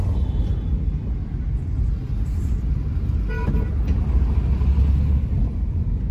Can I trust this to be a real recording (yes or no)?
yes